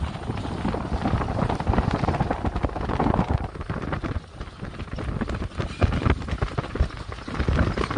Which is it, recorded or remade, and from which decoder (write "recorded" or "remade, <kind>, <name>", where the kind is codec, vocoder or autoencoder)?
recorded